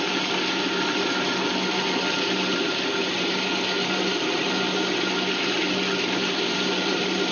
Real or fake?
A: real